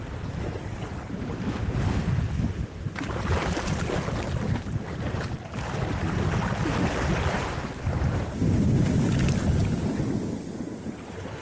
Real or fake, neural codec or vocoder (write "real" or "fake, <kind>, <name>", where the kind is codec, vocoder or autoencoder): real